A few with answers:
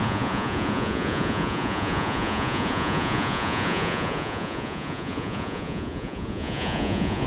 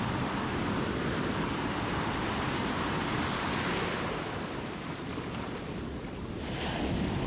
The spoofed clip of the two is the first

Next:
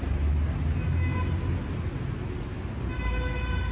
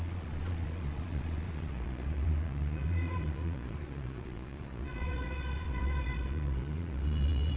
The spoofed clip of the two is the second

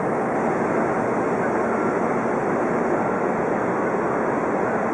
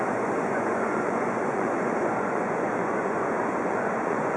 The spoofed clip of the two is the second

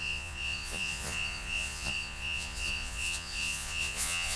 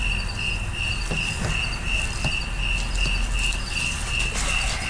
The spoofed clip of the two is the first